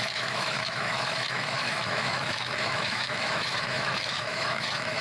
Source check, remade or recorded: remade